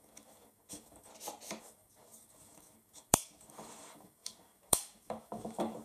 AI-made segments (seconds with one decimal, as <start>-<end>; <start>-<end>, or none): 0.0-1.1; 1.6-5.8